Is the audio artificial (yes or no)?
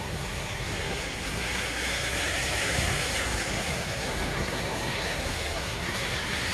yes